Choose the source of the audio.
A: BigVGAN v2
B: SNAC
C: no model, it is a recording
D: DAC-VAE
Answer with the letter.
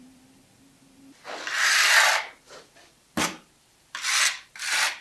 A